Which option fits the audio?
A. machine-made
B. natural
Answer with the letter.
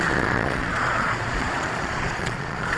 A